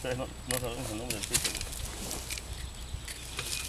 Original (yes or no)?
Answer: yes